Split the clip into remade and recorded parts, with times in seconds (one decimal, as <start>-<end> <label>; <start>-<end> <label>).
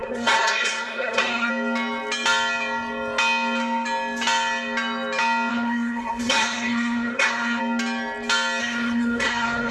0.0-1.5 remade; 1.5-5.5 recorded; 5.5-7.6 remade; 7.6-8.6 recorded; 8.6-9.7 remade